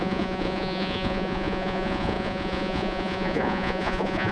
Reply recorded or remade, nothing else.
remade